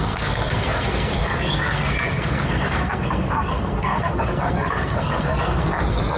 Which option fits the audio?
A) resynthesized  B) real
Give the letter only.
A